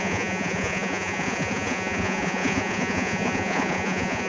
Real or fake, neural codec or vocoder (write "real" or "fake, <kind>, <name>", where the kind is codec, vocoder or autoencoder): fake, vocoder, Vocos